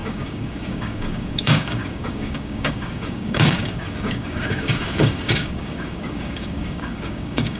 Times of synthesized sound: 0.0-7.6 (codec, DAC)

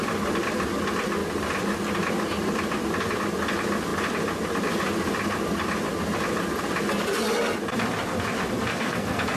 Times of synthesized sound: 8.7-9.4 (codec, SNAC)